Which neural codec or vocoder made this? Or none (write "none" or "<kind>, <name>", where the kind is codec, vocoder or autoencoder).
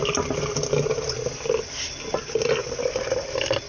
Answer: none